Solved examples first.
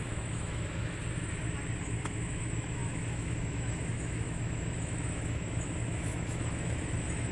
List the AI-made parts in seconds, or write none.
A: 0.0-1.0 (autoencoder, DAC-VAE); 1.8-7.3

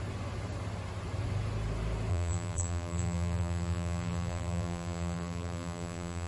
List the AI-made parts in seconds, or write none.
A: 2.1-6.3 (vocoder, BigVGAN v2)

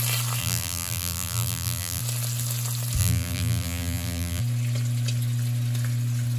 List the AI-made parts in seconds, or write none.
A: 0.4-2.0 (vocoder, BigVGAN v2); 3.0-4.4

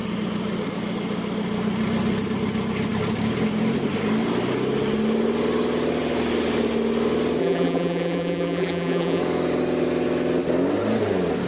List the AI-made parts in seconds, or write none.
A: 7.4-9.2 (vocoder, BigVGAN v2)

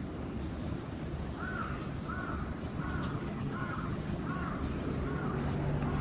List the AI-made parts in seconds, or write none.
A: 3.1-4.2 (vocoder, HiFi-GAN)